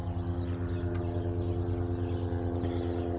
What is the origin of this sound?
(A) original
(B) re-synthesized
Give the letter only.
A